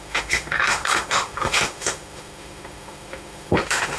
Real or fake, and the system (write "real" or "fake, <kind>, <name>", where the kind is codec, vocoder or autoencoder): fake, autoencoder, DAC-VAE